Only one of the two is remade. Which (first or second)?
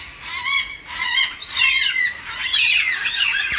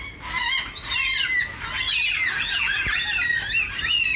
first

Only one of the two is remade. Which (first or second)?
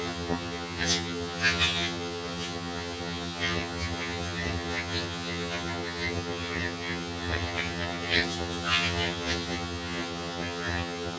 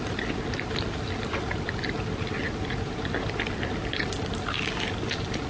first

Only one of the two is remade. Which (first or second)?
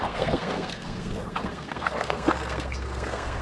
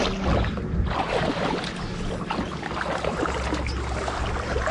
first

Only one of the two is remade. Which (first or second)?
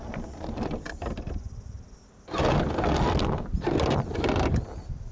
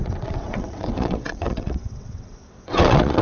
second